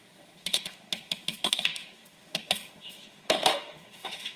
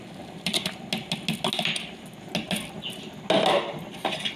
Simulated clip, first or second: first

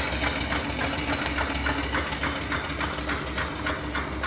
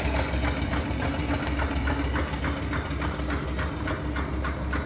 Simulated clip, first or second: second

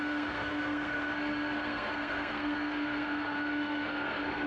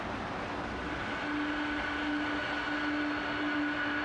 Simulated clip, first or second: first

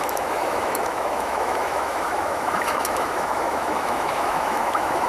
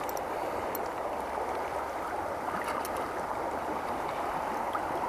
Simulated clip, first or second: first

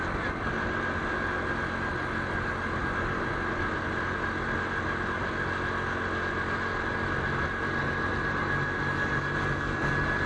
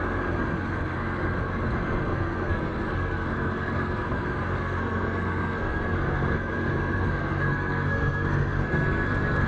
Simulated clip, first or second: second